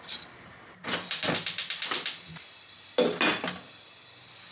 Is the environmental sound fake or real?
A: real